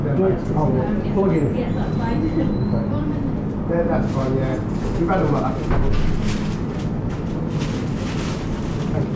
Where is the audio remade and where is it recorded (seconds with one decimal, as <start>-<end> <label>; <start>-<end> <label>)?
0.0-9.2 recorded